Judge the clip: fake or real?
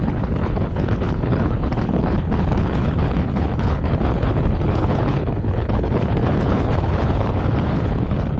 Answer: fake